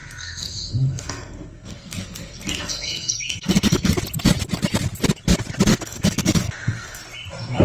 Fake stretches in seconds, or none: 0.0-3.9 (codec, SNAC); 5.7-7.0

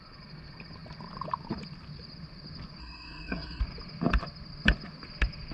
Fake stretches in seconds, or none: 2.8-3.6 (codec, SNAC)

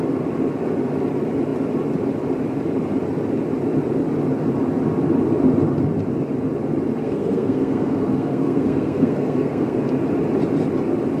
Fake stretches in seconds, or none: 7.0-9.8 (codec, SNAC)

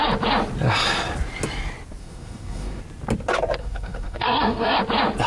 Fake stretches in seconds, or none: 2.0-2.8 (codec, SNAC); 3.6-4.8

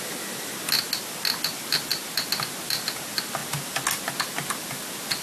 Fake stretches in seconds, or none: none

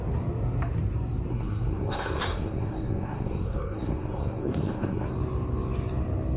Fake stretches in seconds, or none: 1.3-5.1 (codec, SNAC)